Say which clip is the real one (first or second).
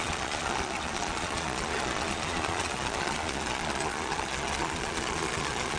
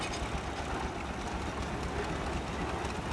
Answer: second